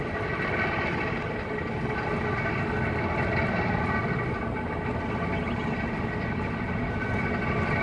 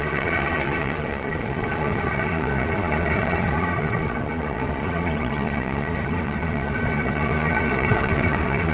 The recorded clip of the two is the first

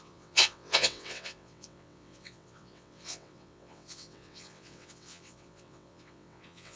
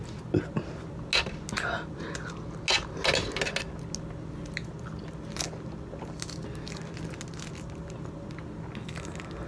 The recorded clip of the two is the second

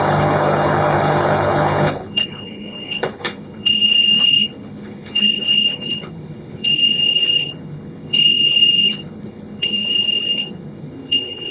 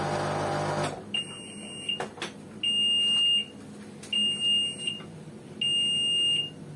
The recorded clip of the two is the second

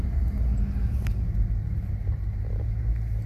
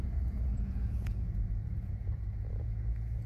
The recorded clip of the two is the first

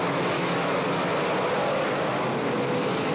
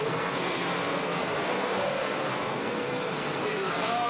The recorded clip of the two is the first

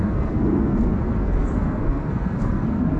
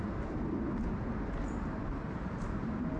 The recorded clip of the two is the second